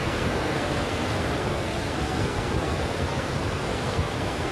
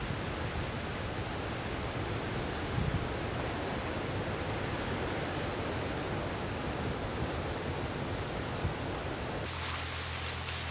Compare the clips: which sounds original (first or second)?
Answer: second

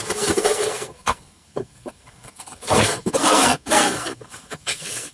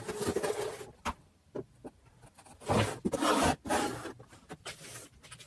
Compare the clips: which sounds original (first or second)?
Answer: second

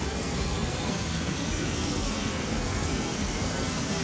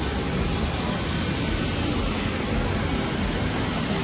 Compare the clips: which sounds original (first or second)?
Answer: second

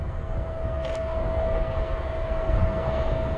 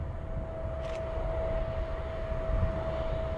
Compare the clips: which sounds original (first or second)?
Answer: second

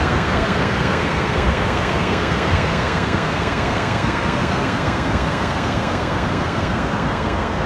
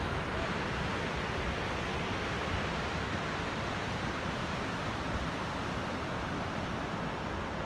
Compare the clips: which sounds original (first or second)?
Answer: second